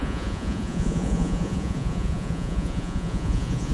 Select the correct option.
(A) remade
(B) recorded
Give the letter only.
A